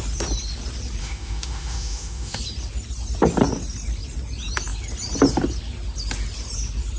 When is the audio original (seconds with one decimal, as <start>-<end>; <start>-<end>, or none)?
0.0-1.0; 2.4-7.0